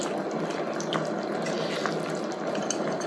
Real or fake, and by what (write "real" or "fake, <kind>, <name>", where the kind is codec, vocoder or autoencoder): real